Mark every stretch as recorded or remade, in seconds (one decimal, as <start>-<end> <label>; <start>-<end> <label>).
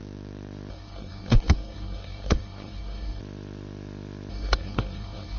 0.0-0.7 recorded; 0.7-3.2 remade; 3.2-4.3 recorded; 4.3-5.4 remade